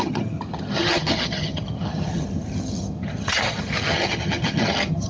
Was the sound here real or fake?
fake